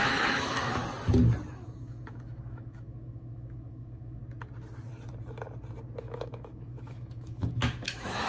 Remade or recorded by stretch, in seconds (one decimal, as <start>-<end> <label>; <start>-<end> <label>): 0.0-0.8 remade; 0.8-1.5 recorded; 1.5-4.2 remade; 4.2-6.0 recorded; 6.0-8.3 remade